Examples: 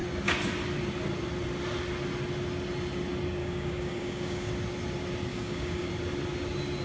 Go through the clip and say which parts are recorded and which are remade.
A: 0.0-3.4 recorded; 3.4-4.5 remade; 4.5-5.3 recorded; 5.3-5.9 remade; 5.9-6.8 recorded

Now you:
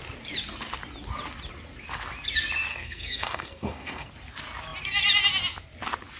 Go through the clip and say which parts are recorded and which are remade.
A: 0.0-2.7 recorded; 2.7-4.1 remade; 4.1-6.2 recorded

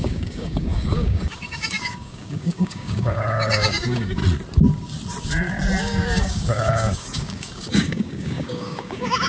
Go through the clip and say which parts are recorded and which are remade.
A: 0.0-4.2 remade; 4.2-5.8 recorded; 5.8-9.3 remade

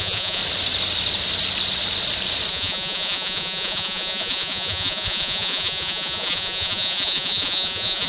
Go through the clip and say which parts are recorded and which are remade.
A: 0.0-0.4 remade; 0.4-2.5 recorded; 2.5-8.1 remade